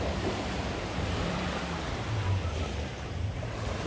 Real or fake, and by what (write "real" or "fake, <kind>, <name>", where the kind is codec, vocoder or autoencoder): fake, vocoder, BigVGAN v2